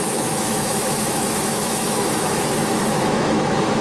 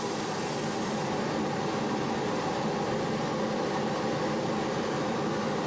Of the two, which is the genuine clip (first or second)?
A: second